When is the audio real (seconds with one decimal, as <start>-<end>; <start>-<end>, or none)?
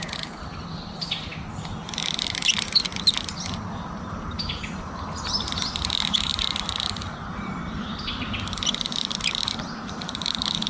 0.0-6.3